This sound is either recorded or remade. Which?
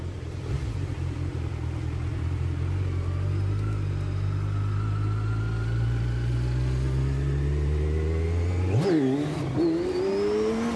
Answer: recorded